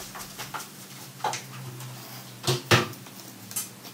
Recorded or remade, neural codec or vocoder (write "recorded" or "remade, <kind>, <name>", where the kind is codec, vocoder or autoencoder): recorded